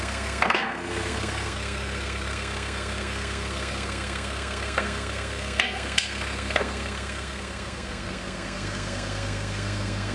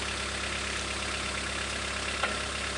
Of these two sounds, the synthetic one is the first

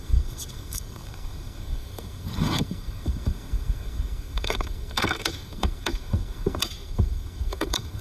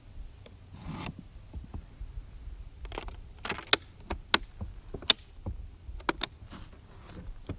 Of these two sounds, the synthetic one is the first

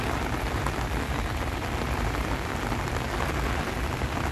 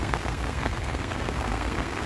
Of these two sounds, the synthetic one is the second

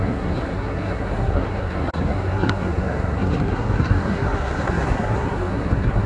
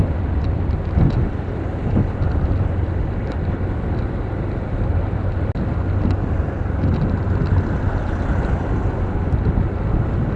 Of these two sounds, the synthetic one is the first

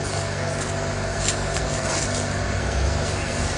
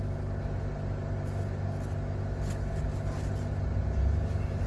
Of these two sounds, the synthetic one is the first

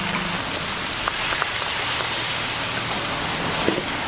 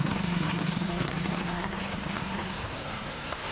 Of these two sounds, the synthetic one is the second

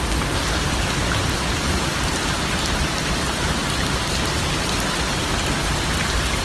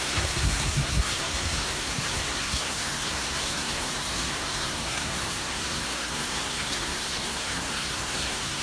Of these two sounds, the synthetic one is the second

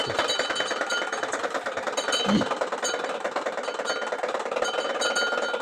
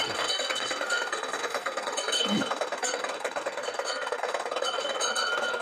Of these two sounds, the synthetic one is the second